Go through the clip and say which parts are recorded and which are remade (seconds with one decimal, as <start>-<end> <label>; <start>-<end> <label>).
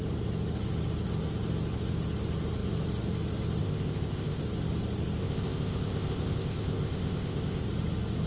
0.0-3.6 recorded; 3.6-4.4 remade; 4.4-5.2 recorded; 5.2-7.6 remade; 7.6-8.3 recorded